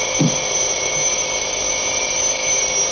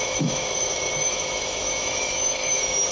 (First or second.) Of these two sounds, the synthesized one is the second